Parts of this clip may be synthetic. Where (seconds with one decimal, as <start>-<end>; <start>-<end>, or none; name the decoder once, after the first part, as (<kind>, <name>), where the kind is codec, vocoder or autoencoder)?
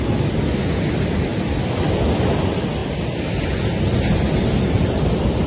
none